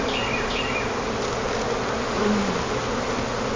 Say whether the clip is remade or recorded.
recorded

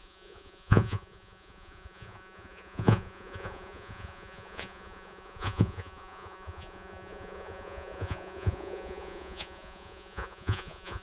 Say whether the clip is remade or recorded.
remade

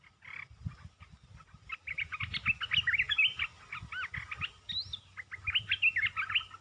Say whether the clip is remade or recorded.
recorded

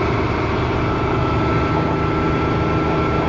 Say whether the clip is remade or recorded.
recorded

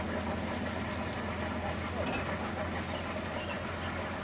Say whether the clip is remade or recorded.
recorded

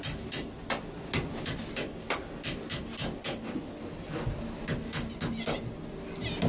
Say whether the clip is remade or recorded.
recorded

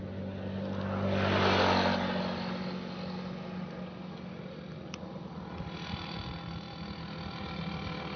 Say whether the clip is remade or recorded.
recorded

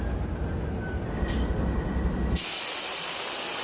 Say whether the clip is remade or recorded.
recorded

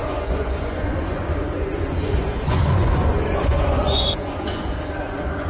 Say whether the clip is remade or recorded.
remade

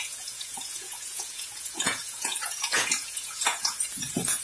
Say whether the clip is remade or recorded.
remade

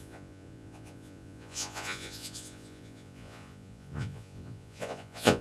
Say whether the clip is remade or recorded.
remade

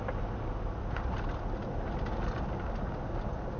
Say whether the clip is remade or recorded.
recorded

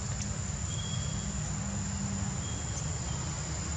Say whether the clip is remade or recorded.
recorded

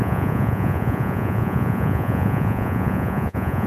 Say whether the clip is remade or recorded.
remade